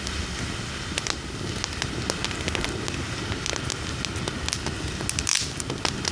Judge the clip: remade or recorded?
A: recorded